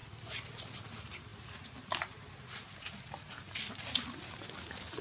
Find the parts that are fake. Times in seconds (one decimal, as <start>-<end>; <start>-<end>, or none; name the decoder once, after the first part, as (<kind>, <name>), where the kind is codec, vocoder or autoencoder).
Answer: none